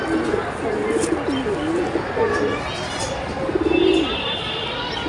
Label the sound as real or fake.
fake